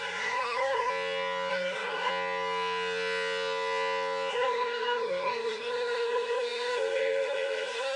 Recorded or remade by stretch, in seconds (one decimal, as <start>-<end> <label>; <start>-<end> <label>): 0.0-0.9 remade; 0.9-1.5 recorded; 1.5-2.1 remade; 2.1-4.3 recorded; 4.3-8.0 remade